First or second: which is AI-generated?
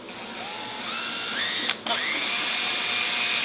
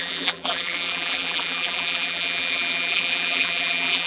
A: second